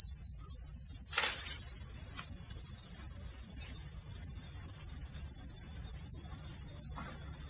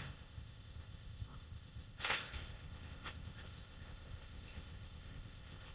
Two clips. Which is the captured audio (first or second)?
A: first